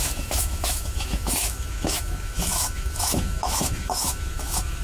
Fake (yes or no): yes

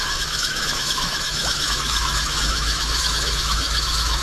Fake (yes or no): yes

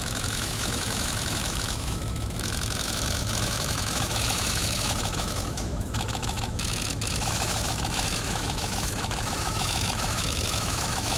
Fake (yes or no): yes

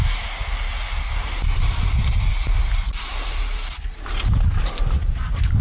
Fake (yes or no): no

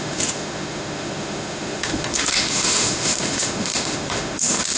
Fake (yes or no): yes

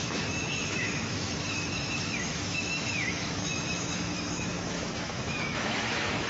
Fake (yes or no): yes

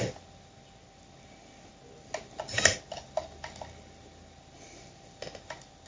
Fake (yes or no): no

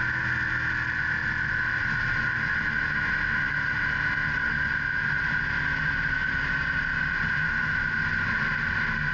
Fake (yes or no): no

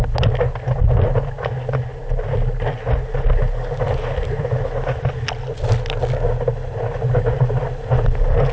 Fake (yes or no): no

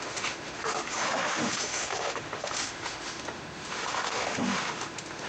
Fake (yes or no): yes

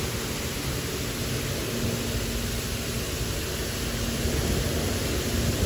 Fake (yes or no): no